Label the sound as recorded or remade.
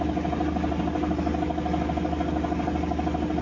recorded